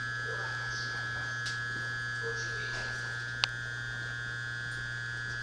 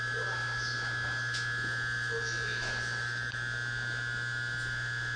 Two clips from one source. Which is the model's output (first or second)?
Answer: second